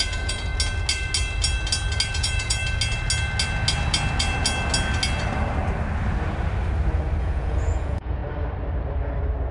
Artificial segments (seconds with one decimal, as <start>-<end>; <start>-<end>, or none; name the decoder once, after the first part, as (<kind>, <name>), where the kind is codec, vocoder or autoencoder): 0.0-0.5 (vocoder, Vocos); 2.1-2.6; 7.2-8.2